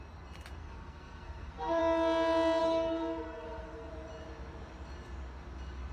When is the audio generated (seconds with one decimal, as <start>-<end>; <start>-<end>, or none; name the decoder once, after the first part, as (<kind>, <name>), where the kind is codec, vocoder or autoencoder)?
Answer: 0.6-1.8 (codec, SNAC); 2.6-3.9